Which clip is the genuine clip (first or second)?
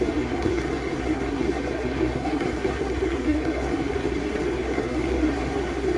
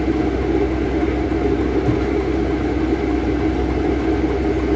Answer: second